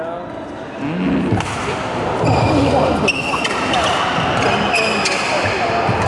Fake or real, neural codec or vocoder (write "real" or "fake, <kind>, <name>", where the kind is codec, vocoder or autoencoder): real